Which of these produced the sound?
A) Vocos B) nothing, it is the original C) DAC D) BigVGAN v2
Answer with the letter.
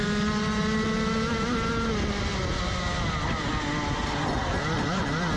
B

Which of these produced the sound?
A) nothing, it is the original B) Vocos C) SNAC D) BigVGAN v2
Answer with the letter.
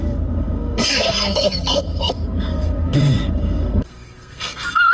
C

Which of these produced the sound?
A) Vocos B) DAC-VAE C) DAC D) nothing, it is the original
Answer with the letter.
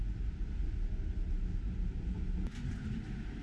D